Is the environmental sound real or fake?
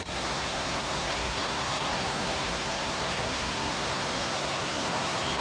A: fake